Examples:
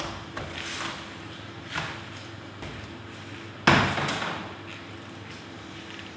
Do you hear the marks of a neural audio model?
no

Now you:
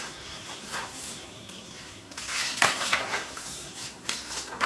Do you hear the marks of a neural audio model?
yes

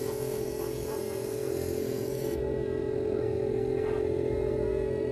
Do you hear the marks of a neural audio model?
yes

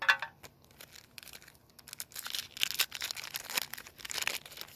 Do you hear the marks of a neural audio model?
no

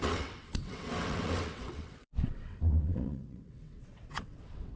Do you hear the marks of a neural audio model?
yes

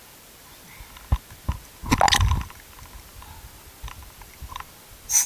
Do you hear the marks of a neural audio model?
no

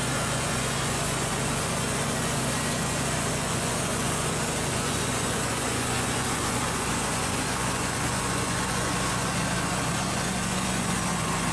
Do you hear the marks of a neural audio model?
yes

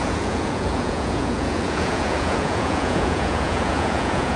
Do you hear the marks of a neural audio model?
yes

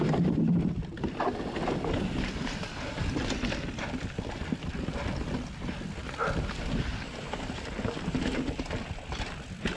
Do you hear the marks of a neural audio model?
no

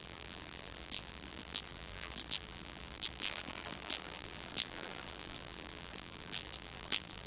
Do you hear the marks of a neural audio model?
yes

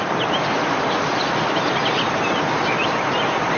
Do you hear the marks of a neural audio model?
no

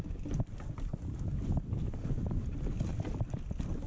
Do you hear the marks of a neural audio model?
no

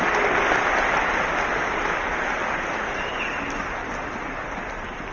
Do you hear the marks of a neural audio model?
no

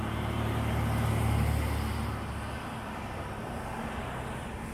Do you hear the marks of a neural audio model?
no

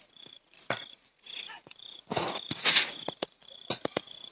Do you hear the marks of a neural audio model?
yes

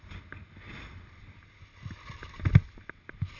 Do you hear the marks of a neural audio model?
no